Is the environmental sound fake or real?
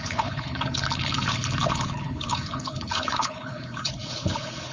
fake